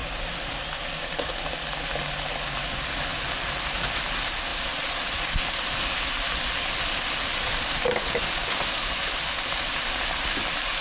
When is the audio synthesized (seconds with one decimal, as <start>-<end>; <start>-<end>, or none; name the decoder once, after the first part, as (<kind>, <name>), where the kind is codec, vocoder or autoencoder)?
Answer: none